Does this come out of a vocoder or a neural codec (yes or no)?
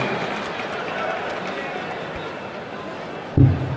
no